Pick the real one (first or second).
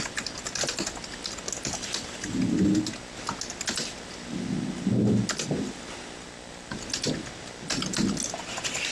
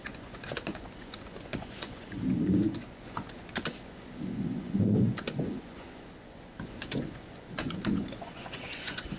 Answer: first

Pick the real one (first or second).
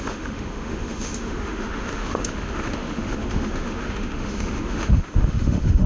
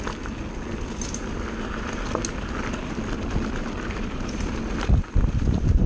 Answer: second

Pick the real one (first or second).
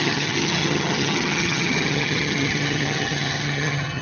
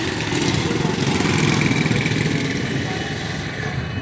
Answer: second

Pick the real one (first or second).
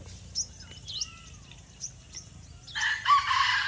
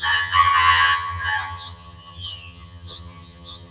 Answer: first